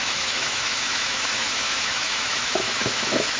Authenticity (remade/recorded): remade